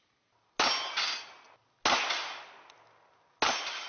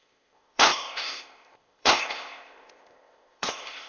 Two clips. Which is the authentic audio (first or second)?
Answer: first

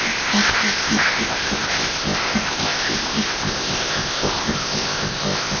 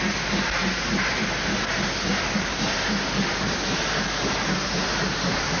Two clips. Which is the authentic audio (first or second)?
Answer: second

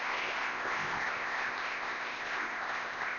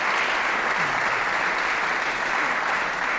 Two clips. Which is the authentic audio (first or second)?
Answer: second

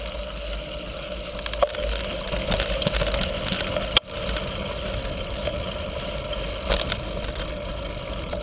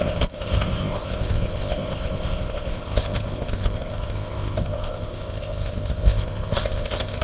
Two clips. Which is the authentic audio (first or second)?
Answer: first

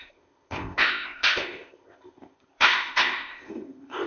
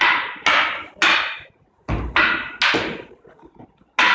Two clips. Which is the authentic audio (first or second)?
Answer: second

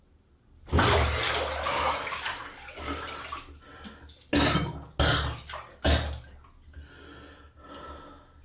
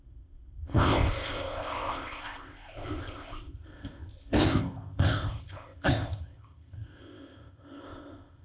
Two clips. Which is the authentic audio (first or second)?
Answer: first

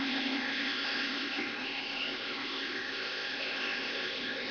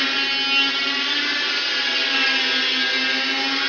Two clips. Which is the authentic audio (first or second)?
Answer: second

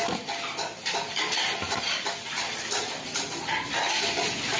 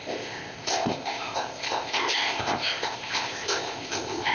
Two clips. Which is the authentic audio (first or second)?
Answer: first